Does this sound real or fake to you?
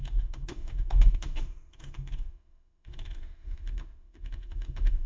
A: fake